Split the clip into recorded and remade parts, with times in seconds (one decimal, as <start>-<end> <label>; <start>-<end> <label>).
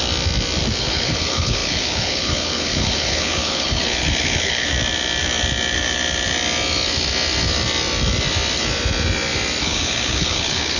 0.0-0.8 recorded; 0.8-4.7 remade; 4.7-9.6 recorded; 9.6-10.8 remade